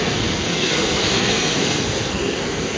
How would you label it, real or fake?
fake